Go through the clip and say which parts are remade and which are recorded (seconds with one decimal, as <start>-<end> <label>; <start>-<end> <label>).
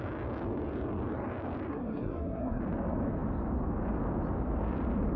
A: 0.0-1.7 recorded; 1.7-2.6 remade; 2.6-5.2 recorded